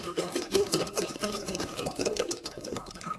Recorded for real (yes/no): no